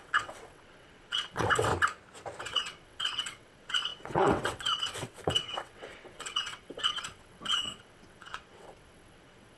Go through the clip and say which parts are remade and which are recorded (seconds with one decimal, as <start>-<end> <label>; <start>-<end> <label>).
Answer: 0.0-1.7 remade; 1.7-2.4 recorded; 2.4-9.6 remade